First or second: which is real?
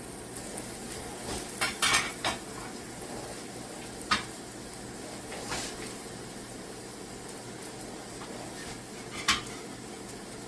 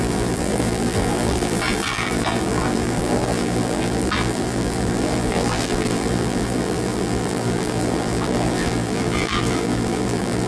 first